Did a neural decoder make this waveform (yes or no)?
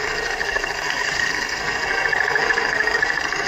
yes